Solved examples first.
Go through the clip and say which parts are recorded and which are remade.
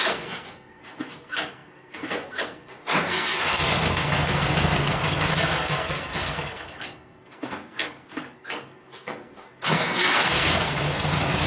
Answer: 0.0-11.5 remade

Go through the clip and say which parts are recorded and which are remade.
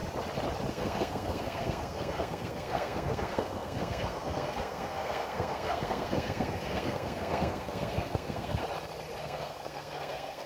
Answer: 0.0-0.7 recorded; 0.7-8.6 remade; 8.6-9.2 recorded; 9.2-10.5 remade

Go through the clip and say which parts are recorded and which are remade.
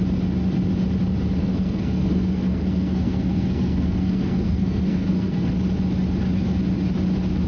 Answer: 0.0-1.4 recorded; 1.4-5.5 remade; 5.5-7.5 recorded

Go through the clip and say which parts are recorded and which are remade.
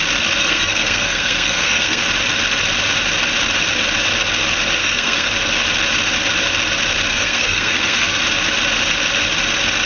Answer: 0.0-0.4 recorded; 0.4-2.0 remade; 2.0-4.8 recorded; 4.8-5.3 remade; 5.3-7.1 recorded; 7.1-8.2 remade; 8.2-9.9 recorded